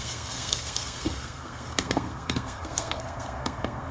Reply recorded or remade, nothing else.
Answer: remade